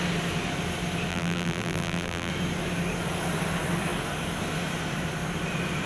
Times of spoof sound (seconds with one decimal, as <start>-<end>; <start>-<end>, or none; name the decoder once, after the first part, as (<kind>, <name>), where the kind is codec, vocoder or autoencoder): 1.1-2.3 (vocoder, BigVGAN v2)